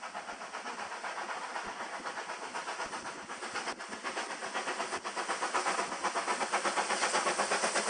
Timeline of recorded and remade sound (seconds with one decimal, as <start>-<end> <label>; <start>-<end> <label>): 0.0-7.9 recorded